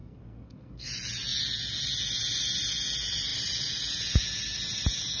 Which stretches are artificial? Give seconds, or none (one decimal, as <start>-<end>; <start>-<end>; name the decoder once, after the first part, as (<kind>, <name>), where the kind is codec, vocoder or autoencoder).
0.0-0.9 (codec, SNAC)